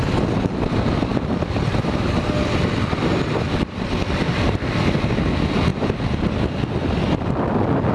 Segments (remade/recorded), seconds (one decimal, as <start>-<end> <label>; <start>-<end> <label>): 0.0-7.9 recorded